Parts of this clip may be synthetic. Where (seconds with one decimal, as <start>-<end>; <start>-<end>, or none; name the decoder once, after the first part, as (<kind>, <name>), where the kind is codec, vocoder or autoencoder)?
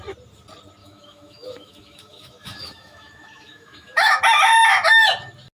0.8-4.2 (autoencoder, DAC-VAE)